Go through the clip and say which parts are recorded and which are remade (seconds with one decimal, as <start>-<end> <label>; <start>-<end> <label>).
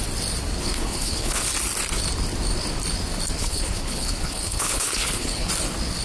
0.0-0.6 recorded; 0.6-1.5 remade; 1.5-3.4 recorded; 3.4-5.5 remade; 5.5-6.0 recorded